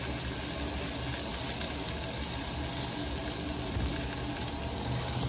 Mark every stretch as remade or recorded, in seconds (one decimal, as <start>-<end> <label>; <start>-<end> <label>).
0.0-5.3 recorded